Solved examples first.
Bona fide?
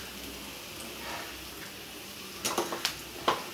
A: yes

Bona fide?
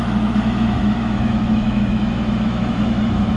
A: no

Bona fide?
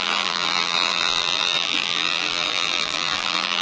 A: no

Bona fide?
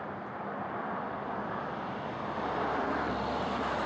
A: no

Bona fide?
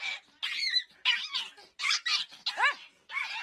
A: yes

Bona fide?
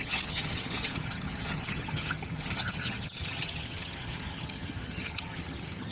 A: no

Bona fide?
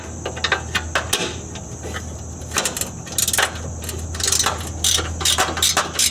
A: yes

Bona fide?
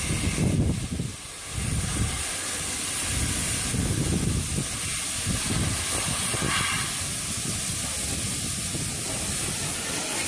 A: yes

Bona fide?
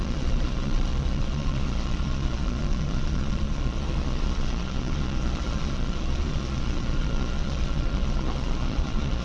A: no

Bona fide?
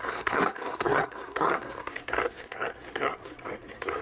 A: no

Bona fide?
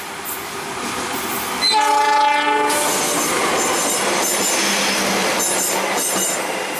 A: yes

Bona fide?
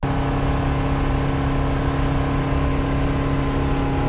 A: yes